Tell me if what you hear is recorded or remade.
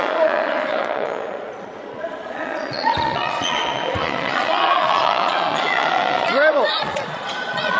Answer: remade